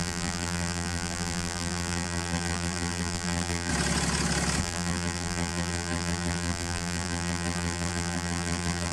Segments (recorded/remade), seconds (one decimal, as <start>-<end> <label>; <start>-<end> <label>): 0.0-3.7 remade; 3.7-4.6 recorded; 4.6-8.9 remade